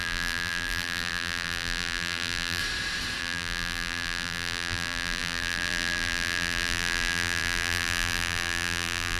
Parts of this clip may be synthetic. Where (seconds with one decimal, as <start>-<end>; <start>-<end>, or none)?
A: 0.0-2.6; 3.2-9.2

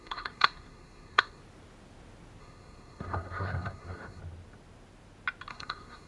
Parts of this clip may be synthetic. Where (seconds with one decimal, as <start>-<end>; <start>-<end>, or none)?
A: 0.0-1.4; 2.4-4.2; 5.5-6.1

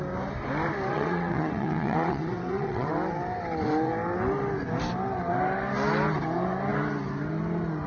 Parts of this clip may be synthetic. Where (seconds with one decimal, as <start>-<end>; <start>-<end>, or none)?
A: 0.9-2.9

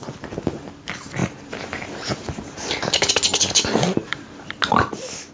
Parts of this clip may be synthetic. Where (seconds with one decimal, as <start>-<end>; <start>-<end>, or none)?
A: 1.2-3.1; 4.0-4.6

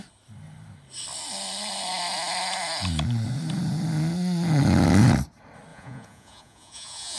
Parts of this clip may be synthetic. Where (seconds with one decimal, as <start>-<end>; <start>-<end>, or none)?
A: 5.7-7.2

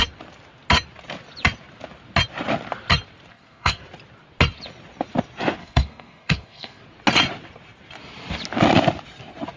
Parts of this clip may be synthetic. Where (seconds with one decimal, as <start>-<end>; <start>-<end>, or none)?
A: 3.3-3.8; 5.6-6.8

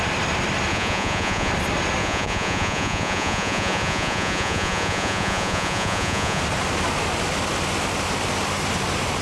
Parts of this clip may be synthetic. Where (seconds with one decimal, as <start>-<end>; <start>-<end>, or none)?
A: 0.7-1.5; 2.0-6.4

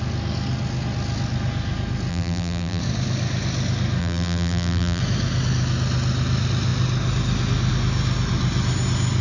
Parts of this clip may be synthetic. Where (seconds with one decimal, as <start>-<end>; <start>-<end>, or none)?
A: 2.1-2.8; 4.0-5.0